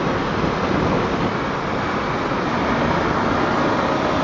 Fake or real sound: fake